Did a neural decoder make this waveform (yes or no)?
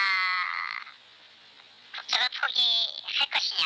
no